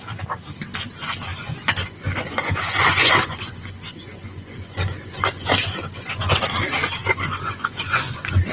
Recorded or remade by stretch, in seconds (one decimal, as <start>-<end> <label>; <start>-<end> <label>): 0.0-1.3 recorded; 1.3-6.4 remade; 6.4-7.0 recorded; 7.0-8.5 remade